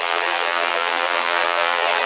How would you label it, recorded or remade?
remade